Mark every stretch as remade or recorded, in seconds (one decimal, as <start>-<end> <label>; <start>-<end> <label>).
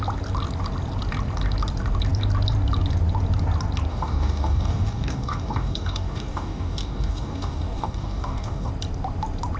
0.0-3.9 recorded; 3.9-8.7 remade; 8.7-9.6 recorded